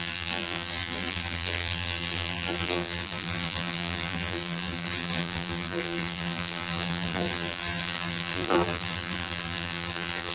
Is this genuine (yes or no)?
no